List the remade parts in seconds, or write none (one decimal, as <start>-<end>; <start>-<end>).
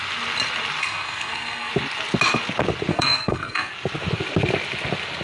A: 0.8-1.7; 2.9-3.7